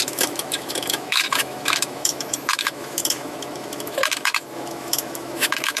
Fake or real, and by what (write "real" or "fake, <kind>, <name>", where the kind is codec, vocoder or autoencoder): fake, autoencoder, DAC-VAE